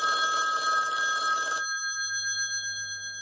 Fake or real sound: real